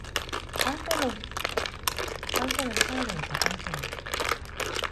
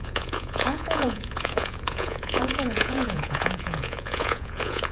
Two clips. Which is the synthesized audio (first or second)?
second